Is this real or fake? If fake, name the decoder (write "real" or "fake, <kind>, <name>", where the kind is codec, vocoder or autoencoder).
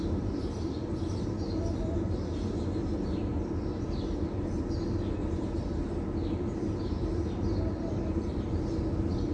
real